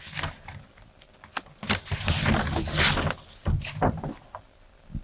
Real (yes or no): yes